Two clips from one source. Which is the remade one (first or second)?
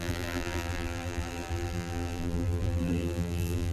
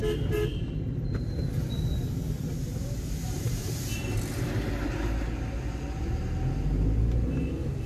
first